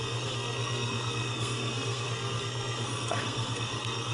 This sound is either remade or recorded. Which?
remade